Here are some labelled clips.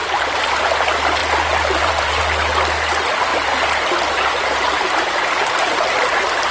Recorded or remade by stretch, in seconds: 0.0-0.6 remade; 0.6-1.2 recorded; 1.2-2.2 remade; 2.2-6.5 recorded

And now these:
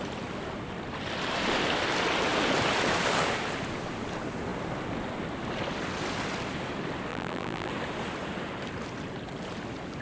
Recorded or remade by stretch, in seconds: 0.0-7.1 recorded; 7.1-7.7 remade; 7.7-10.0 recorded

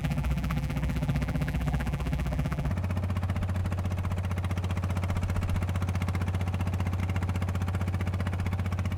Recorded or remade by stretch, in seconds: 0.0-2.7 remade; 2.7-9.0 recorded

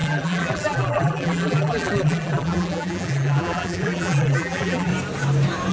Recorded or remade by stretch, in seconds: 0.0-4.9 remade; 4.9-5.7 recorded